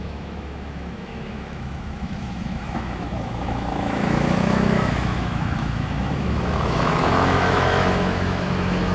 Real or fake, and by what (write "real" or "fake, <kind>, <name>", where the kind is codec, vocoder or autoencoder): fake, autoencoder, DAC-VAE